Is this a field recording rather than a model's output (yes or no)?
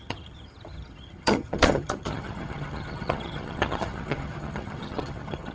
no